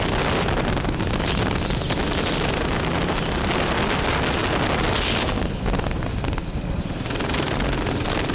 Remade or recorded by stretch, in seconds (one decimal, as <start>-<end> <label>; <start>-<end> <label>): 0.0-8.3 recorded